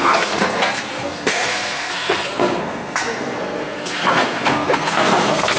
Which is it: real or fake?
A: fake